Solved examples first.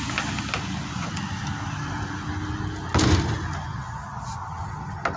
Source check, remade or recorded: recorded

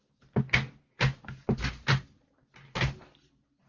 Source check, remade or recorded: recorded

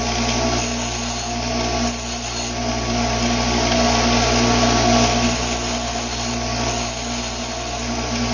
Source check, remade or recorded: recorded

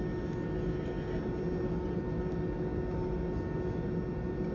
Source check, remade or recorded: recorded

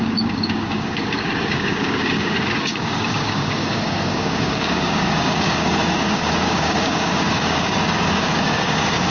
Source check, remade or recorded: remade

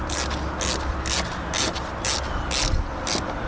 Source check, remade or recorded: recorded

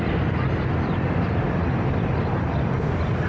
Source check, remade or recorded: recorded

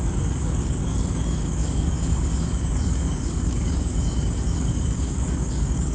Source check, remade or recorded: remade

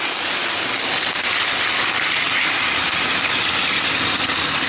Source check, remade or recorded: recorded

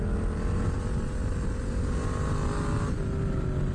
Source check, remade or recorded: recorded